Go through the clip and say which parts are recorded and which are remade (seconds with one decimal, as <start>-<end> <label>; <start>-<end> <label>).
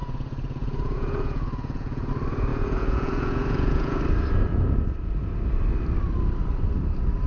0.0-2.1 remade; 2.1-2.5 recorded; 2.5-4.0 remade; 4.0-7.3 recorded